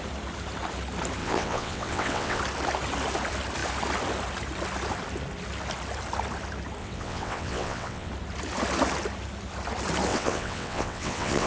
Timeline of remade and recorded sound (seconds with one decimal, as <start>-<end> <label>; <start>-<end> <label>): 0.0-1.2 recorded; 1.2-2.4 remade; 2.4-6.8 recorded; 6.8-8.1 remade; 8.1-10.1 recorded; 10.1-11.5 remade